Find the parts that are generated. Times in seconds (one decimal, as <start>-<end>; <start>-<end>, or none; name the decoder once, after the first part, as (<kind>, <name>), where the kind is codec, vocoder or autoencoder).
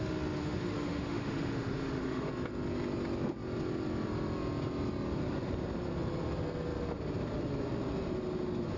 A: 0.4-2.3 (autoencoder, DAC-VAE)